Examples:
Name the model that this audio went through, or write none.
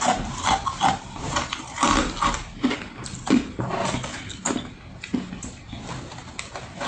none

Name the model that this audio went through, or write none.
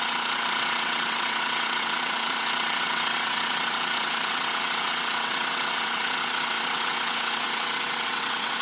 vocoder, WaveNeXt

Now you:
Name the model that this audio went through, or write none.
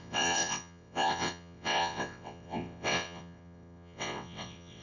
vocoder, WaveNeXt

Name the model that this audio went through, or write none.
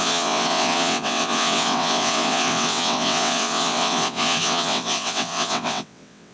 vocoder, WaveNeXt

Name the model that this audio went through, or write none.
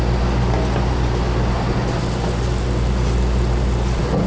none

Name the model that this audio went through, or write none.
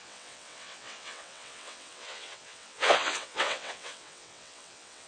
vocoder, WaveNeXt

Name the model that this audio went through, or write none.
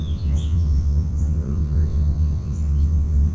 vocoder, WaveNeXt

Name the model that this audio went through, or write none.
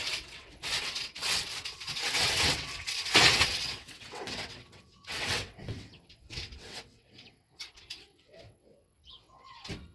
vocoder, WaveNeXt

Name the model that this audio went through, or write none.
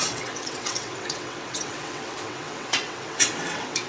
vocoder, WaveNeXt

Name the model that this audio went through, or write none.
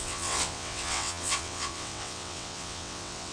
vocoder, WaveNeXt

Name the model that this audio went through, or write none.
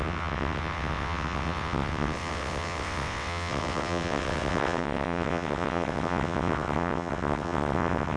vocoder, WaveNeXt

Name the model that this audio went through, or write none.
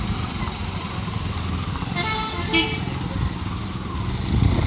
none